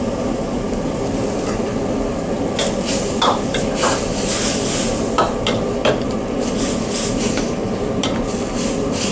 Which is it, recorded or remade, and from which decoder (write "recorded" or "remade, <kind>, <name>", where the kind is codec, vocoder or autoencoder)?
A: remade, vocoder, BigVGAN v2